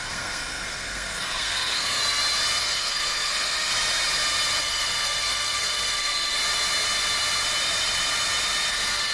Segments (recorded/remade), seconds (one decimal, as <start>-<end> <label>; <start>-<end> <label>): 0.0-2.0 remade; 2.0-2.6 recorded; 2.6-3.7 remade; 3.7-4.6 recorded; 4.6-6.4 remade; 6.4-8.7 recorded; 8.7-9.1 remade